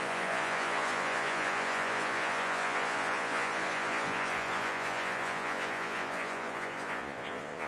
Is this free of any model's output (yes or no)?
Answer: no